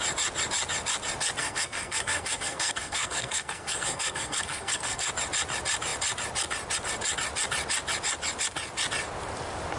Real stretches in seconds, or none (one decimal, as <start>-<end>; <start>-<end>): 0.0-1.4; 5.1-9.8